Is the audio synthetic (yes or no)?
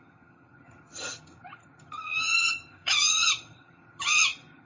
yes